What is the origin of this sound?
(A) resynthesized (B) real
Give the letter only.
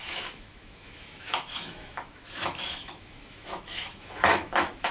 A